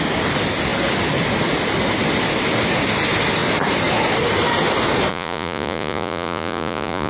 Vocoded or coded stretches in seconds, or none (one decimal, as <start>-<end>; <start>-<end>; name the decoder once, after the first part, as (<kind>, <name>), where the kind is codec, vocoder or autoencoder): 5.1-7.1 (vocoder, Vocos)